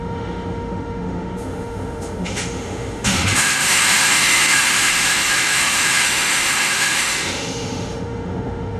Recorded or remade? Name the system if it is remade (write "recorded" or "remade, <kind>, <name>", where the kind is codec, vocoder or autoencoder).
remade, autoencoder, DAC-VAE